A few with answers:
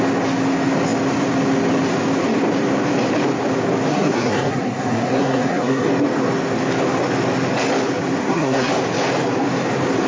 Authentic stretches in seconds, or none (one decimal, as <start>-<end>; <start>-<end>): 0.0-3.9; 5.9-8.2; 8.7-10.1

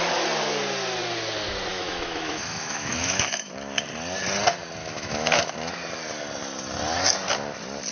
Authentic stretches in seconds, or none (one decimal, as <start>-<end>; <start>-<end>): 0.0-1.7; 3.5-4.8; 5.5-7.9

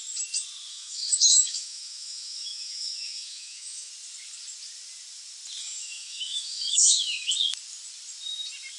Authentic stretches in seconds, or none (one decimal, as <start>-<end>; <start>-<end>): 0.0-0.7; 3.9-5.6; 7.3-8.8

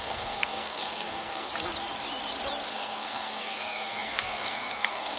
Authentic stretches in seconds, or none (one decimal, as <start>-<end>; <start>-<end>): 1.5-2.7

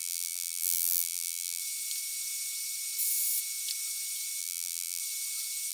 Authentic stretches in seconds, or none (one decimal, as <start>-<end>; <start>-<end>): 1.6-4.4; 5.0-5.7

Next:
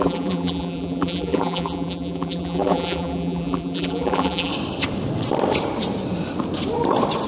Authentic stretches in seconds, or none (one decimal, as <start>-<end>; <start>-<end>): 4.5-7.3